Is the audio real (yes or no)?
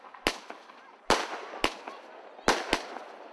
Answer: yes